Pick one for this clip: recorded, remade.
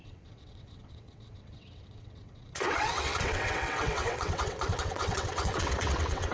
remade